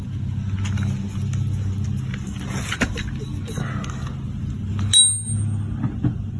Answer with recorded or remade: recorded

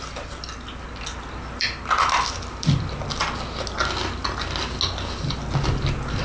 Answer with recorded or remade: recorded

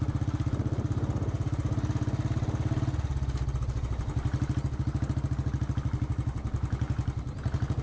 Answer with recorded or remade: recorded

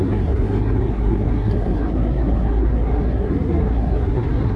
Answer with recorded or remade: remade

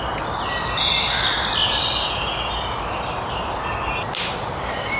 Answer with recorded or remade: recorded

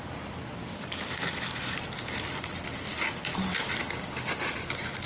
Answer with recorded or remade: recorded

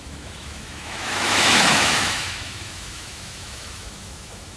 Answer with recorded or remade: remade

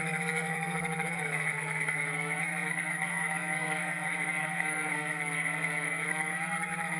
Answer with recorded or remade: remade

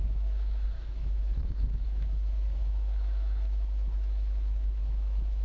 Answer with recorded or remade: remade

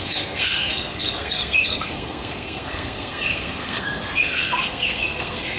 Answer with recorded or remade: remade